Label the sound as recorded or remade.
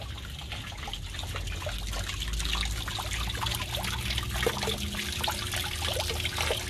recorded